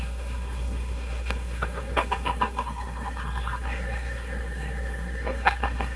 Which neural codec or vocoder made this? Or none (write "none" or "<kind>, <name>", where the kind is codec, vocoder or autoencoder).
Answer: codec, SNAC